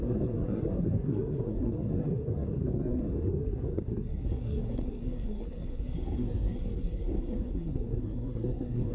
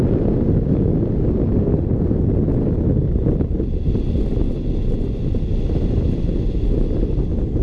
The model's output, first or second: first